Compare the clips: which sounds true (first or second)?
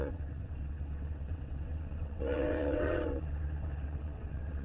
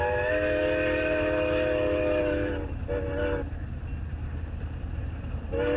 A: second